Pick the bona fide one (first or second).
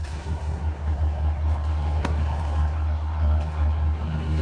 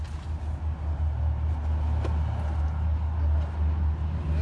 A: second